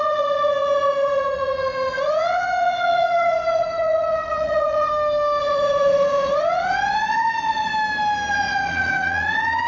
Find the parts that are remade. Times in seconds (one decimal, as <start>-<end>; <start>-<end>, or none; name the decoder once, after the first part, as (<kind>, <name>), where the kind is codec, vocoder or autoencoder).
0.0-4.9 (vocoder, Vocos); 5.4-7.7; 8.3-9.7